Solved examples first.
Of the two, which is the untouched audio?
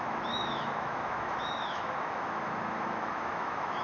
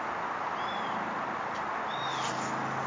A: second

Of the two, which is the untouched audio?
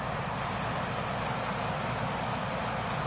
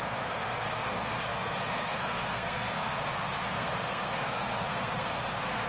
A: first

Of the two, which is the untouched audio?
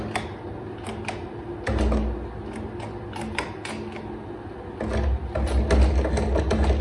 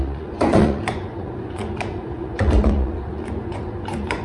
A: first